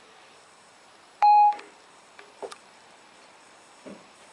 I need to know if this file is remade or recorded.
remade